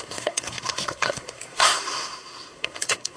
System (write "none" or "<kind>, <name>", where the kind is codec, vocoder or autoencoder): codec, SNAC